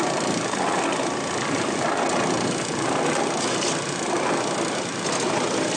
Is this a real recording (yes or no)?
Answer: yes